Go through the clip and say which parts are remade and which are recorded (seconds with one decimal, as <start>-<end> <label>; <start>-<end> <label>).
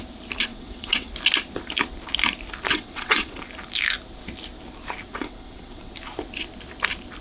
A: 0.0-0.5 recorded; 0.5-1.1 remade; 1.1-2.7 recorded; 2.7-3.4 remade; 3.4-5.1 recorded; 5.1-5.9 remade; 5.9-7.2 recorded